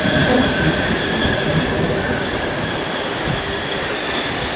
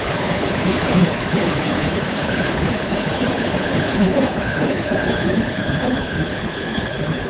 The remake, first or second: second